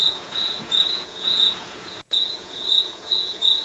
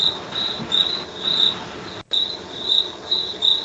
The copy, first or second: first